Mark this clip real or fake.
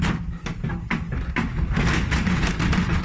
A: real